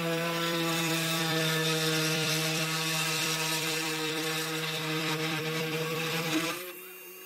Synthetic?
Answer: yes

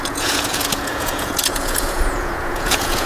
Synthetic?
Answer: yes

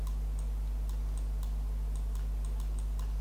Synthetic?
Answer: no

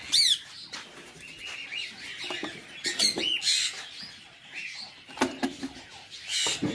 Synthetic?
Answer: no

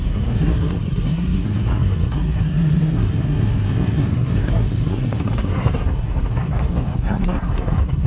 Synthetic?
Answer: yes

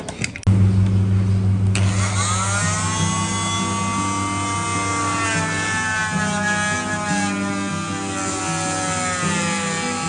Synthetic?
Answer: no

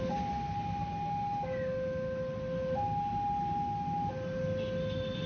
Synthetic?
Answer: no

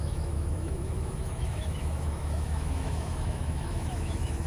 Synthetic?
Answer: yes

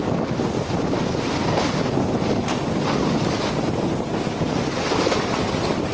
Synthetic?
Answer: no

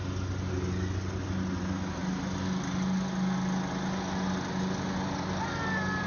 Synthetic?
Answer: no